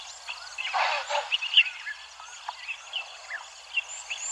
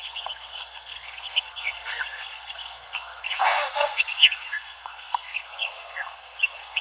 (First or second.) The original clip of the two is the first